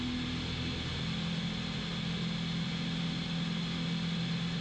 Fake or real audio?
real